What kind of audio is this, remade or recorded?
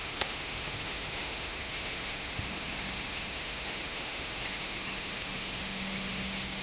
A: remade